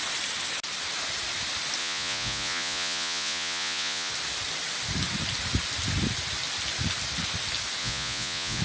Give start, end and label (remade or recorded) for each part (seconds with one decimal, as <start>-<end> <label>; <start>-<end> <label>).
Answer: 0.0-1.8 recorded; 1.8-4.1 remade; 4.1-7.8 recorded; 7.8-8.6 remade